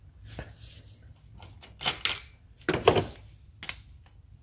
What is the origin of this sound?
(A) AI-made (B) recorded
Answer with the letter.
B